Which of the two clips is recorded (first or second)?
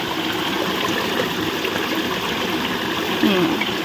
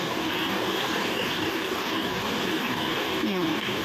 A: first